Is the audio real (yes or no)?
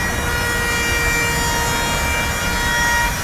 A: yes